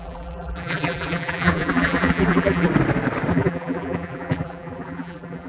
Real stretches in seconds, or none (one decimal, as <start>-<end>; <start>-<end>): 2.7-3.3